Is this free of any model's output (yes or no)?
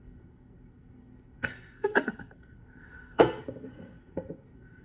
no